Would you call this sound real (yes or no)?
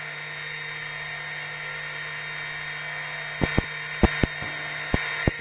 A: yes